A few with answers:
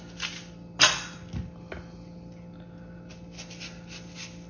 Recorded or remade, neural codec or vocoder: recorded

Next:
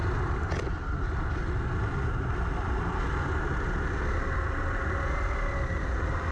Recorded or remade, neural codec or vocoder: recorded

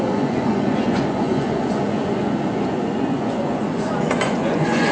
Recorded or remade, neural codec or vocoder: remade, vocoder, Vocos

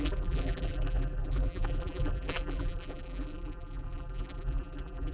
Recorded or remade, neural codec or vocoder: remade, vocoder, BigVGAN v2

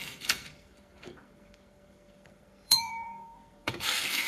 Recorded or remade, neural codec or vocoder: remade, codec, SNAC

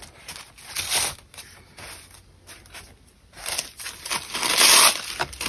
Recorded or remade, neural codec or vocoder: recorded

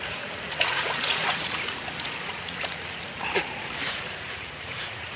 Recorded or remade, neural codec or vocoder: remade, vocoder, Vocos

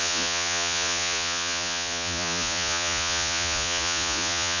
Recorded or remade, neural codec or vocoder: remade, vocoder, Vocos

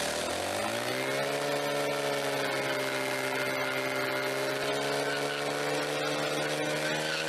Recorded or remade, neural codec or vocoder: recorded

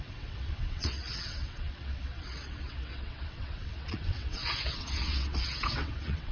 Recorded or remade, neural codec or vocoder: remade, vocoder, WaveNeXt